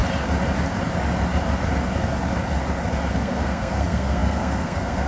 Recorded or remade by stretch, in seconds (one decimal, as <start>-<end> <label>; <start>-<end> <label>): 0.0-3.1 recorded; 3.1-5.1 remade